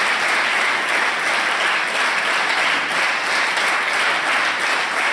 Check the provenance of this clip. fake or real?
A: real